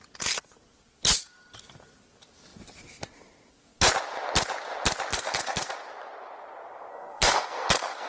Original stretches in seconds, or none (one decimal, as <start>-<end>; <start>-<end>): 0.0-5.1; 5.7-6.9

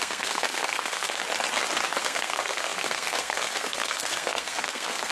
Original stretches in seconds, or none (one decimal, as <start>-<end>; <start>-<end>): 1.2-2.0

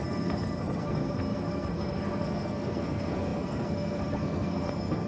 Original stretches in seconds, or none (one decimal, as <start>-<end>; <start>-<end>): none

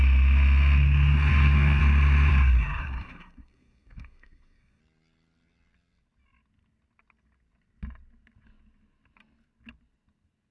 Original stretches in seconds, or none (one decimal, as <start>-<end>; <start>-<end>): 0.0-1.3; 1.8-2.3; 4.8-10.5

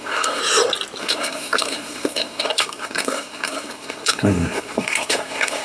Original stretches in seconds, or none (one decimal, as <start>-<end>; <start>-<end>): 0.4-1.0